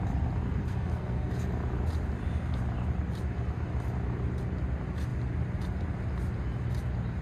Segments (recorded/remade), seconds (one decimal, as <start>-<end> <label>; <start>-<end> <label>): 0.0-0.6 recorded; 0.6-1.3 remade; 1.3-7.2 recorded